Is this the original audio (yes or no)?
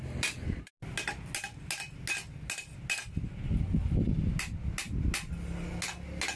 yes